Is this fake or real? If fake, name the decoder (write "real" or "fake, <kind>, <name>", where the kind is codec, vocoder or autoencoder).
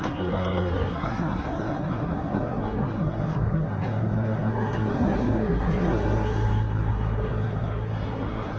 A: fake, codec, SNAC